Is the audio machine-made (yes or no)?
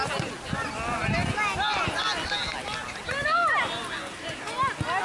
no